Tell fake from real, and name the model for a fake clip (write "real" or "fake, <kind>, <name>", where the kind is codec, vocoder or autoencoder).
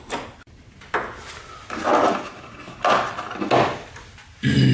real